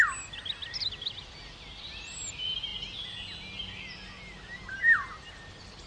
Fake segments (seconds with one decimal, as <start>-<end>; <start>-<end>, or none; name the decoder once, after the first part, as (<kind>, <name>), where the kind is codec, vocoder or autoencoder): none